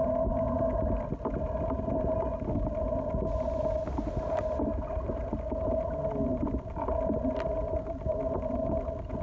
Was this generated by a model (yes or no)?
no